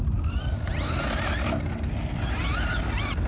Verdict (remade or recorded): recorded